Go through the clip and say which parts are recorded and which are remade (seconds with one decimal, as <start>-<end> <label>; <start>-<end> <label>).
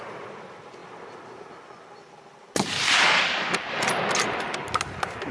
0.0-5.3 recorded